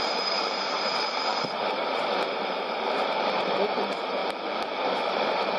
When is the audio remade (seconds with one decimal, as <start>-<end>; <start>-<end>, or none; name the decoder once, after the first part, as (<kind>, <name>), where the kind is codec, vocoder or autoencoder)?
0.0-4.2 (vocoder, BigVGAN v2); 4.8-5.6